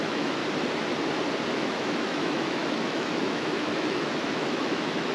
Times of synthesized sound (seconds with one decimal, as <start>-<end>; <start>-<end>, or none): 0.0-0.4; 1.5-5.1